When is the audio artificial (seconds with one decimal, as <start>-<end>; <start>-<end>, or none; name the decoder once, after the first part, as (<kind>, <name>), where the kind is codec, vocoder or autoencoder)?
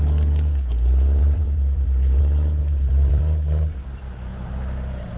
1.2-2.2 (vocoder, BigVGAN v2); 2.6-3.2; 4.3-5.2